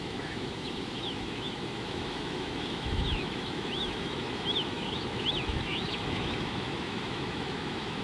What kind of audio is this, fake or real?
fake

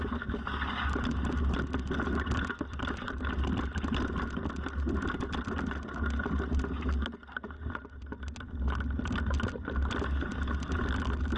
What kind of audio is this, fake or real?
real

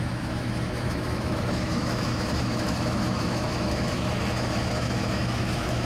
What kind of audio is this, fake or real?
fake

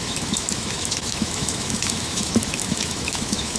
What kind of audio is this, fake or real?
fake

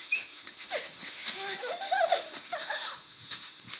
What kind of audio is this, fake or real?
fake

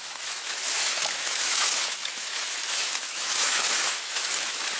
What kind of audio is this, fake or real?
fake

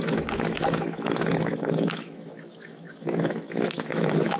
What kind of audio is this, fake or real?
fake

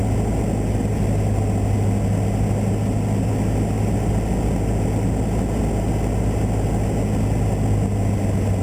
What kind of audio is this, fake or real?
real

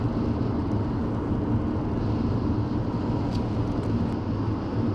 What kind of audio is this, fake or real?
real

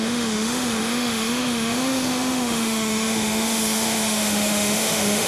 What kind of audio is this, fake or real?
fake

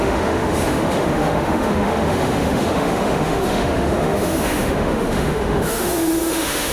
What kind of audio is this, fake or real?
fake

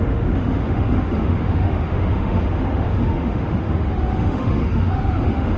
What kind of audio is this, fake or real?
fake